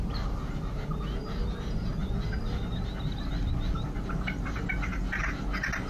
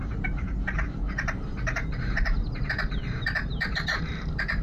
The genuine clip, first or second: first